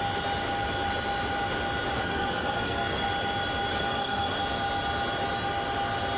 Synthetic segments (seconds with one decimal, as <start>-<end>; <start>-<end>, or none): 1.9-3.1; 3.7-4.4